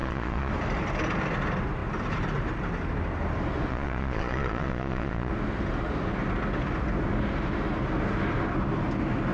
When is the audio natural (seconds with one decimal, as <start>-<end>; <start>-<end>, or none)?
0.5-3.7; 5.3-9.3